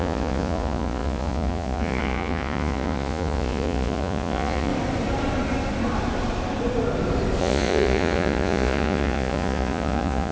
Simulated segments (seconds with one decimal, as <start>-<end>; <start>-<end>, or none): 0.0-4.7; 7.4-10.3